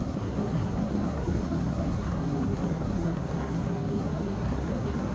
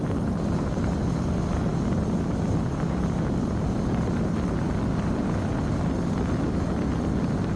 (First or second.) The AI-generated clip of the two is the first